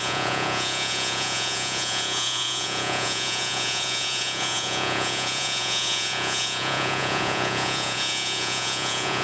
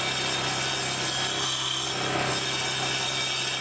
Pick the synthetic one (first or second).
first